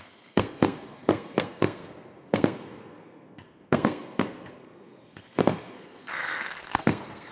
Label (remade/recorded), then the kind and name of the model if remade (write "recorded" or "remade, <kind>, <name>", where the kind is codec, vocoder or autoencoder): remade, codec, SNAC